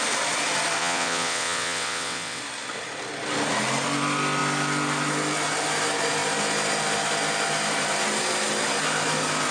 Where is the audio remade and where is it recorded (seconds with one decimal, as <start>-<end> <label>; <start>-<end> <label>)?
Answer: 0.0-0.8 recorded; 0.8-2.4 remade; 2.4-9.5 recorded